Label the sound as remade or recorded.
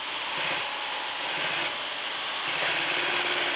recorded